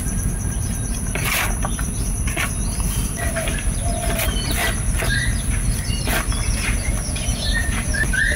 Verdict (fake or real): fake